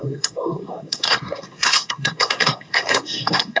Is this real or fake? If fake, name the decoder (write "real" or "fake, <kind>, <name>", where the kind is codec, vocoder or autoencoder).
fake, codec, SNAC